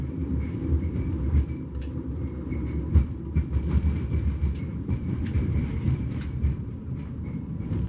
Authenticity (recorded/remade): remade